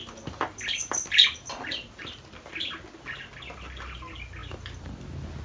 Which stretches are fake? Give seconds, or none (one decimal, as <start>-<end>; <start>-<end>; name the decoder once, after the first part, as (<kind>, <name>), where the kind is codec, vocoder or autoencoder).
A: none

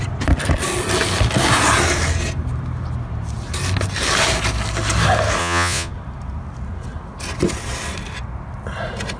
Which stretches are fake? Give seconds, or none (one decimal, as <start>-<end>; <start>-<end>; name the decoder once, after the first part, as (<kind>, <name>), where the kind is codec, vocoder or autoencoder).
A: 5.4-5.9 (vocoder, Vocos)

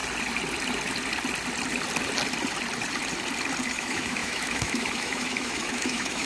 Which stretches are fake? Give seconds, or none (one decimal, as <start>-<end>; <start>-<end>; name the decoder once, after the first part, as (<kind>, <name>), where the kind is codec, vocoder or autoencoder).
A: 3.7-6.3 (autoencoder, DAC-VAE)